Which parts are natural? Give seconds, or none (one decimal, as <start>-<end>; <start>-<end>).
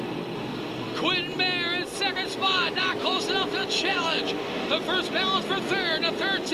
0.0-2.4; 3.2-3.6; 4.3-6.5